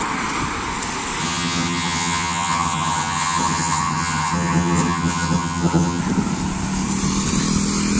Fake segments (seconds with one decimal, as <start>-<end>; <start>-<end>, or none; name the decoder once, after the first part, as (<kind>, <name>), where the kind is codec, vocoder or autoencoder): 1.2-6.0 (vocoder, HiFi-GAN)